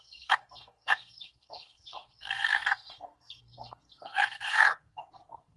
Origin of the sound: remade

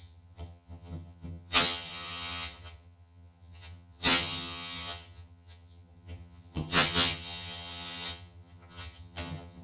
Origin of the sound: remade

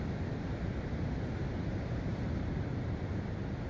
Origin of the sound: recorded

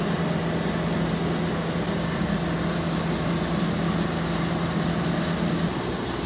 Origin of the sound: recorded